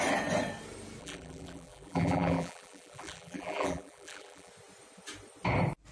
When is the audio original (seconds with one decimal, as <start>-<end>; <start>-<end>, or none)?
0.0-1.0; 4.5-5.9